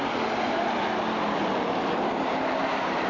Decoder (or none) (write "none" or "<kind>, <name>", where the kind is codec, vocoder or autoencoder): none